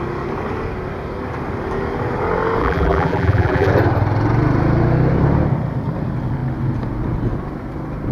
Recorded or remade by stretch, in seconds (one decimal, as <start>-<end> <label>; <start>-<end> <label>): 0.0-2.6 recorded; 2.6-3.7 remade; 3.7-8.1 recorded